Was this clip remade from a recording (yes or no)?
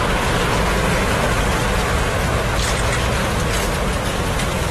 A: no